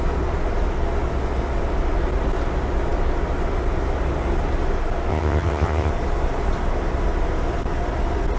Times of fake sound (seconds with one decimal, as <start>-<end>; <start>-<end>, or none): 5.1-5.9